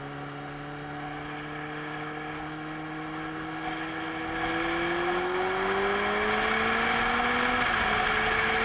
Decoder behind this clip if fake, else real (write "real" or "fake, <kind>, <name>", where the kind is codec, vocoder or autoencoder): real